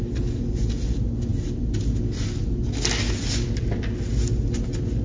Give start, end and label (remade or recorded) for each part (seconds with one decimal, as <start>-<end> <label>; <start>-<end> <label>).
0.0-5.0 recorded